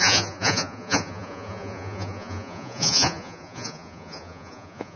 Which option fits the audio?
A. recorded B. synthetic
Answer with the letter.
B